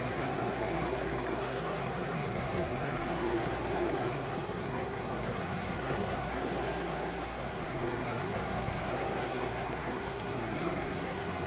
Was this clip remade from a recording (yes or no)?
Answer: yes